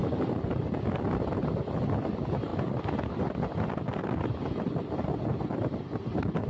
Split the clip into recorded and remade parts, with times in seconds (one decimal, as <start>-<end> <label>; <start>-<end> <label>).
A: 0.0-6.5 recorded